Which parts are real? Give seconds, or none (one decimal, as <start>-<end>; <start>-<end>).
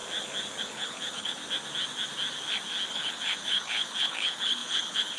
0.0-0.6; 1.4-2.9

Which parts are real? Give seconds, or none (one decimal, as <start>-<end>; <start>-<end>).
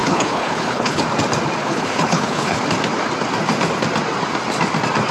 1.0-1.6; 2.6-5.1